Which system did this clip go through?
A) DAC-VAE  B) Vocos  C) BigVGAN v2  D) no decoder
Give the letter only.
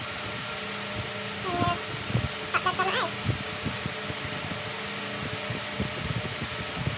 D